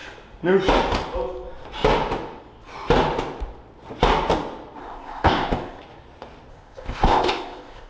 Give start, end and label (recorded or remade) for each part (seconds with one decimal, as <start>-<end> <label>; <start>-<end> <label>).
0.0-4.8 recorded; 4.8-5.8 remade; 5.8-6.5 recorded; 6.5-7.9 remade